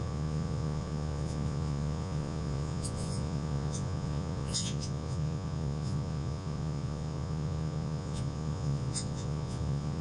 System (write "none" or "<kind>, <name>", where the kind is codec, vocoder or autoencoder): vocoder, Vocos